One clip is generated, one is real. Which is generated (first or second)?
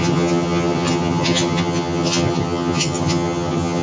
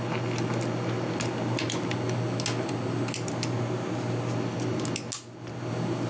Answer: first